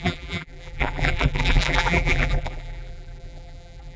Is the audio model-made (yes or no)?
yes